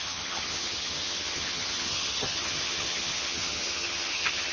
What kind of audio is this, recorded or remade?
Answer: remade